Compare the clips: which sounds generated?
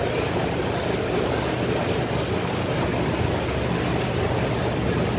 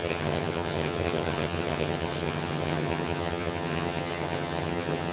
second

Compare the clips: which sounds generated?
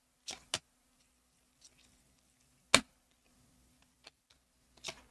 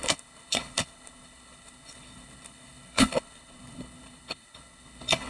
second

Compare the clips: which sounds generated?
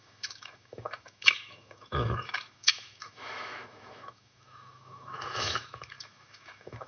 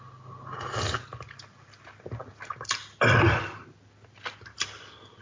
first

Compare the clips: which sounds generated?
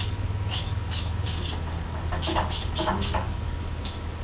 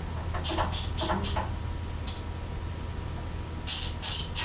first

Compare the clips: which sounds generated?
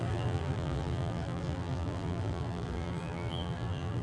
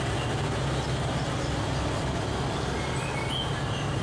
first